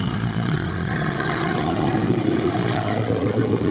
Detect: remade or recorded remade